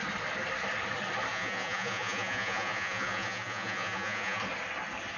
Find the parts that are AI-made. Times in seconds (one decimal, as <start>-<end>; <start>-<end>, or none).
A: 1.3-4.4

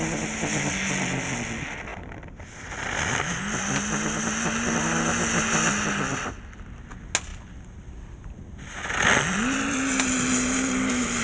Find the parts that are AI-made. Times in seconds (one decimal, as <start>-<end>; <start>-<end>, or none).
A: none

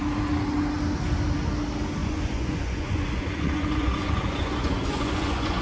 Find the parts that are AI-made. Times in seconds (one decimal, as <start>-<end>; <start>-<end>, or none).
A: 2.0-5.6

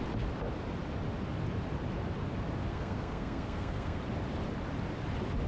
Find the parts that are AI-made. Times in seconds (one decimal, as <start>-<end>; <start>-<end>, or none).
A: 2.7-4.0

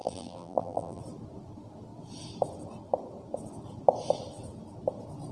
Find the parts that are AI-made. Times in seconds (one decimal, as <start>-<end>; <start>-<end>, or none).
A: 0.0-1.0